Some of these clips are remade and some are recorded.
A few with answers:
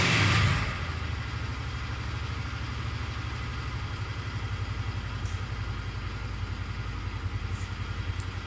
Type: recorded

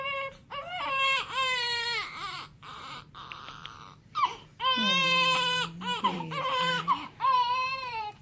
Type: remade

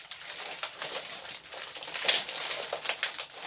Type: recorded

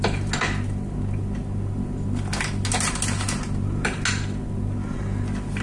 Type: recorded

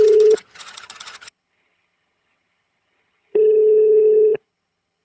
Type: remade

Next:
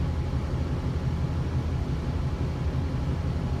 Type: recorded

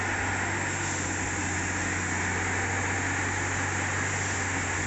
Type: recorded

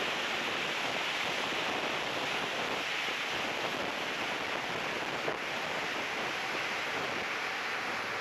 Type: recorded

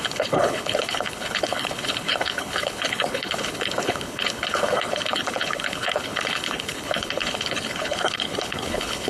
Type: remade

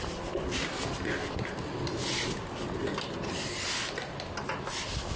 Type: recorded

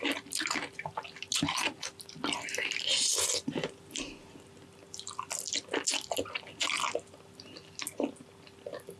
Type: recorded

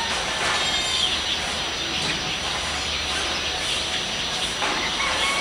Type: recorded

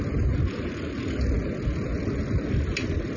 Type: recorded